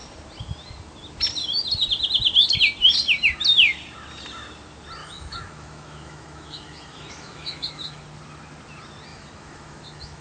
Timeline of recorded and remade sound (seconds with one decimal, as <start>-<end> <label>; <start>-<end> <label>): 0.0-5.0 recorded; 5.0-8.0 remade; 8.0-9.1 recorded; 9.1-10.2 remade